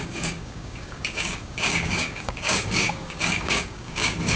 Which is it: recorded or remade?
remade